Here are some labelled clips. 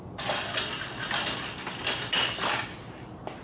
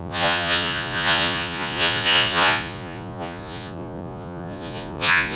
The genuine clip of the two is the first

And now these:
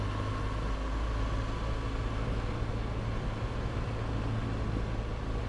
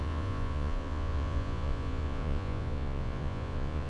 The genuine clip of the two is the first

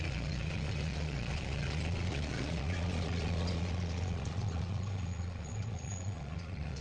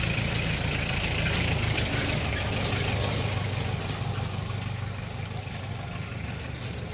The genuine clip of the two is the second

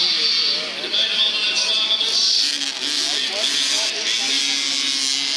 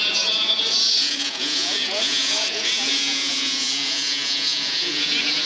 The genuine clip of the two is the first